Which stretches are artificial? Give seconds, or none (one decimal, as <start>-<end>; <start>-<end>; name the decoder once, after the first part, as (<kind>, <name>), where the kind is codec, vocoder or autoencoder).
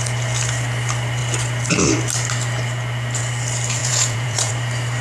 3.8-4.5 (vocoder, Vocos)